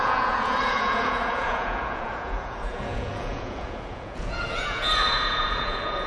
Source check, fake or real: fake